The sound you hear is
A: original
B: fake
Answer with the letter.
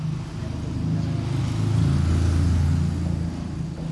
A